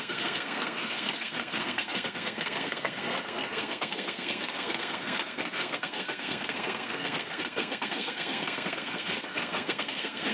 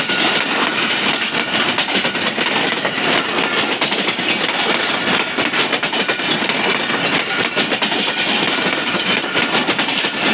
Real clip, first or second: second